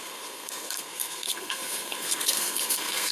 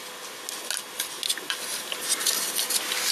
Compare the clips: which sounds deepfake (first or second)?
first